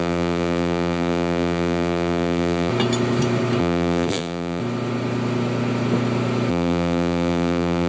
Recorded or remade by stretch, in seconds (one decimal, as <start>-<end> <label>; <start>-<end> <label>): 0.0-2.7 remade; 2.7-3.6 recorded; 3.6-4.6 remade; 4.6-6.5 recorded; 6.5-7.9 remade